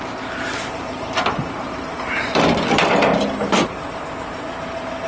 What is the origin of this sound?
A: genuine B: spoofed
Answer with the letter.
A